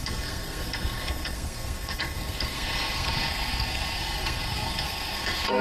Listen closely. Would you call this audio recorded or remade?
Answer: remade